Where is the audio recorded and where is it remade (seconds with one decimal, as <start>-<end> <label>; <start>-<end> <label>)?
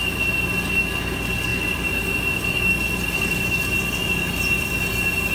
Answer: 0.0-1.5 recorded; 1.5-4.7 remade; 4.7-5.3 recorded